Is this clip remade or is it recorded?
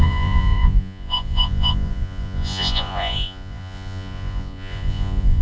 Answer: remade